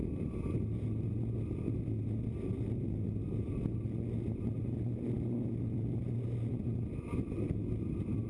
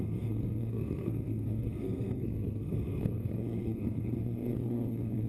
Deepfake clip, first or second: second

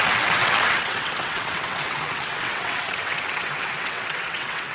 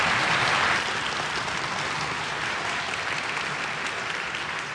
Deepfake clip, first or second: first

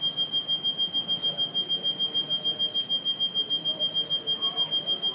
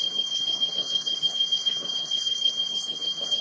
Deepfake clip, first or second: second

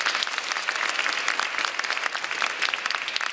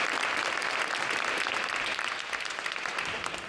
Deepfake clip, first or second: second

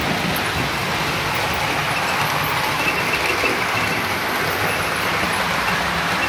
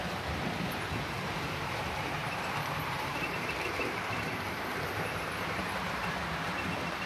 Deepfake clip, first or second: second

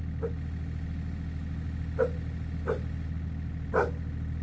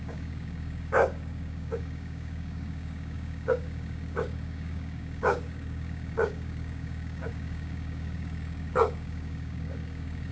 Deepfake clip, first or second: second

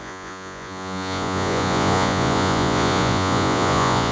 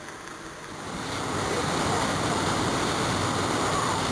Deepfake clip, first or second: first